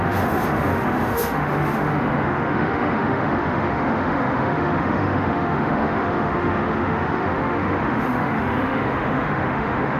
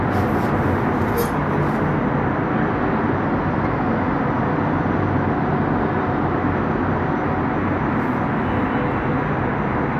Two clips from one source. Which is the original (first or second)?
second